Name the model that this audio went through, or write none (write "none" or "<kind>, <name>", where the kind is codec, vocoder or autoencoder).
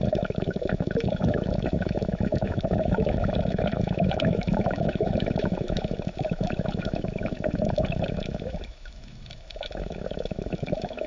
autoencoder, DAC-VAE